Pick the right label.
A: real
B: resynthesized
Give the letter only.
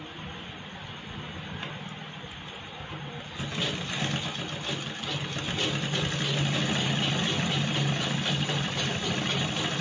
A